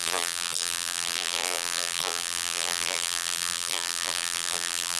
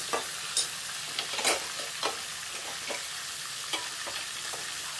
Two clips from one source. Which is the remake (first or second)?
first